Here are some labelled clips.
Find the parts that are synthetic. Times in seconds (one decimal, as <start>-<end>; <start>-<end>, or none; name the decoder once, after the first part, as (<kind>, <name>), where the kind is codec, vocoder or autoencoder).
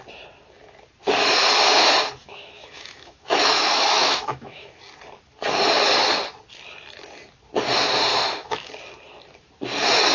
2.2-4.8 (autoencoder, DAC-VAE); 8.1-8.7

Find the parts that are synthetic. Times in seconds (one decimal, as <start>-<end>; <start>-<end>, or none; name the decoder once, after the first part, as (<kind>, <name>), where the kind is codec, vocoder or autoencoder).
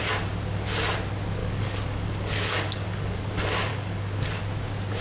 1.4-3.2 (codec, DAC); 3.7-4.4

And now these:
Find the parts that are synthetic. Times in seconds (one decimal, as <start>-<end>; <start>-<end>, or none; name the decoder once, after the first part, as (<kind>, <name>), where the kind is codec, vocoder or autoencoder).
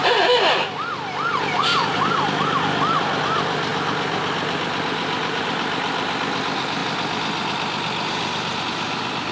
1.7-2.2 (vocoder, BigVGAN v2)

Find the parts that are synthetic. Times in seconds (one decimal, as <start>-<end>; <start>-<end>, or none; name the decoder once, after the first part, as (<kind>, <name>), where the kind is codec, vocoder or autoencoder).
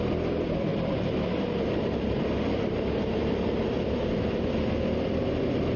0.7-4.2 (vocoder, BigVGAN v2)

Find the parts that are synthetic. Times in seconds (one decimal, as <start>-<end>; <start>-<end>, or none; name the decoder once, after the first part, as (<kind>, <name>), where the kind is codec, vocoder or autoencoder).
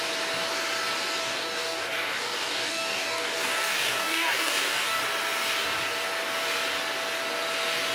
1.2-5.0 (codec, DAC)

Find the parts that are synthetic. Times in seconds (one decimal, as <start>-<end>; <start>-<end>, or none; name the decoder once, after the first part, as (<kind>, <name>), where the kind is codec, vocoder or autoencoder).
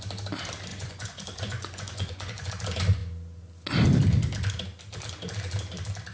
0.7-2.5 (vocoder, Vocos)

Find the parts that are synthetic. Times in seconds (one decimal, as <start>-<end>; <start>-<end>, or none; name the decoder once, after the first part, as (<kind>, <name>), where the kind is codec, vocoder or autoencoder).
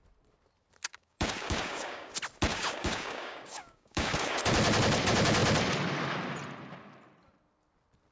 0.9-2.1 (codec, DAC); 2.5-4.4